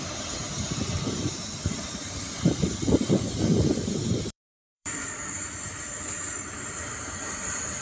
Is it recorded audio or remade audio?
remade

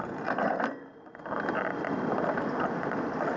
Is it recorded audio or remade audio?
recorded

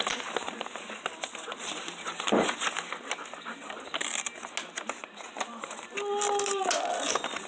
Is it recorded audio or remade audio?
recorded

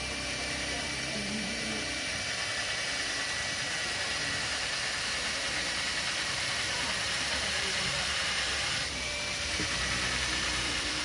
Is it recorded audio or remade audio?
remade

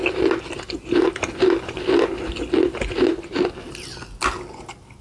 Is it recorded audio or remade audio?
recorded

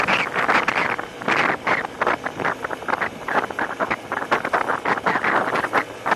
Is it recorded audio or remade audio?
recorded